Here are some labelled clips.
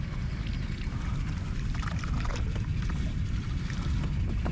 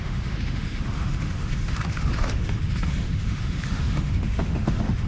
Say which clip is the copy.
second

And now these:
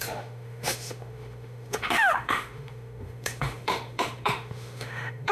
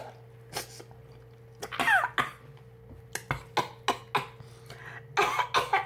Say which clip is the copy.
first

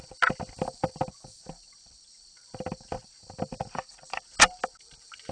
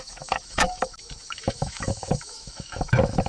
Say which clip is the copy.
second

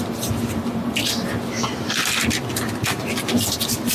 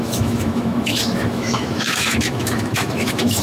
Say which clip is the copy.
second